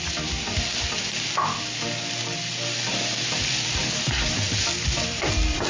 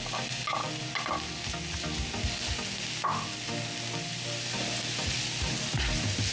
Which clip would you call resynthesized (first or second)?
first